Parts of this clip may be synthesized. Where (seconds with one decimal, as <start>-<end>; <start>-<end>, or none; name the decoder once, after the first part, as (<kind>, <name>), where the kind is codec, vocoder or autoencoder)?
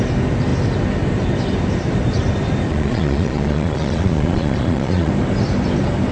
2.7-5.1 (vocoder, Vocos)